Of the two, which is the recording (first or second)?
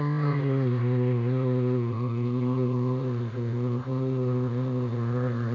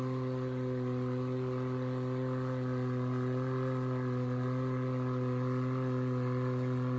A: second